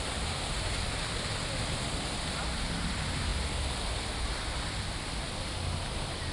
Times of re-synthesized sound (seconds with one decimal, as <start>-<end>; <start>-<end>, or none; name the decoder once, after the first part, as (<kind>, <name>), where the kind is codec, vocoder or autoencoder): none